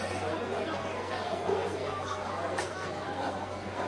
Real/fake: fake